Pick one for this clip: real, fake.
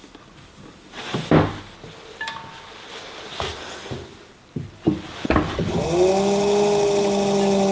real